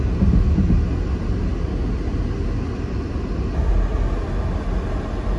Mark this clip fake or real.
real